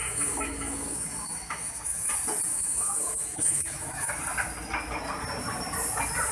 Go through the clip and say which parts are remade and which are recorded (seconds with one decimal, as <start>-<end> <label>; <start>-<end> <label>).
0.0-2.1 remade; 2.1-2.5 recorded; 2.5-4.1 remade; 4.1-6.3 recorded